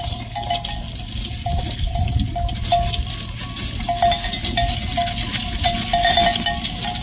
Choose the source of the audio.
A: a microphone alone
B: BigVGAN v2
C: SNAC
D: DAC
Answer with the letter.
A